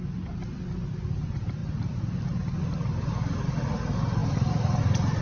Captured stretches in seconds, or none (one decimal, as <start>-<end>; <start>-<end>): 0.0-5.2